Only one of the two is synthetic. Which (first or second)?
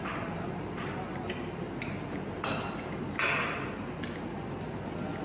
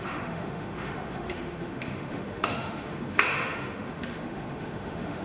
second